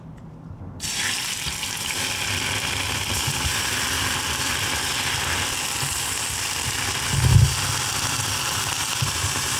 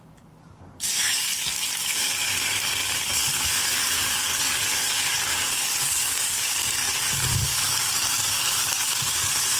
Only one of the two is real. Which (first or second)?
first